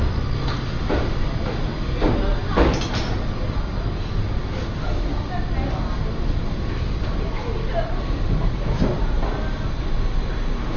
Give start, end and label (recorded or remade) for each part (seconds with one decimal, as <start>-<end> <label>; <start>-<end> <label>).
0.0-10.8 recorded